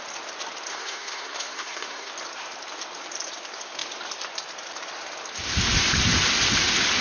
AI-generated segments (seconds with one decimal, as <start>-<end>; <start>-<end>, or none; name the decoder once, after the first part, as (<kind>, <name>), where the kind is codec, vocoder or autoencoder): 0.7-2.1 (codec, SNAC)